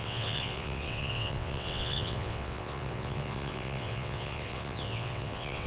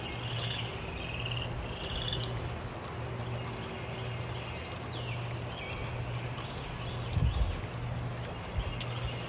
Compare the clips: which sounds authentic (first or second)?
second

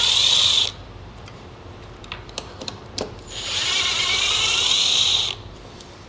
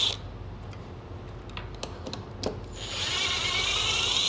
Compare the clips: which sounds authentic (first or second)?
second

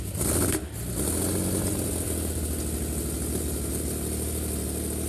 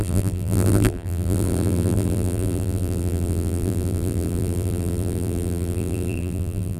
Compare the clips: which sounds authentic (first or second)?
first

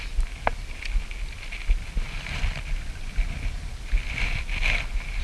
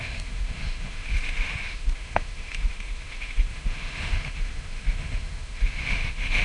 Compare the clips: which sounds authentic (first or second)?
first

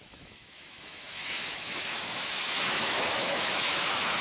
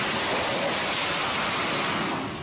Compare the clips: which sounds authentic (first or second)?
second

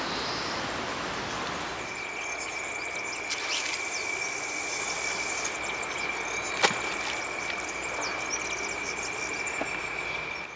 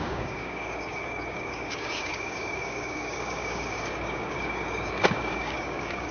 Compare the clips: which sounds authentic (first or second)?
first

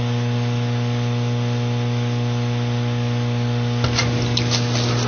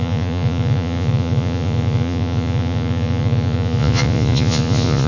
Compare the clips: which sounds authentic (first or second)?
first